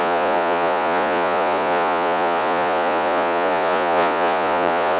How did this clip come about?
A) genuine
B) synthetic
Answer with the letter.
B